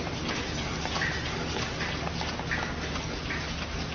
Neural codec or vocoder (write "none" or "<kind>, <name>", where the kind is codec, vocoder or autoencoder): none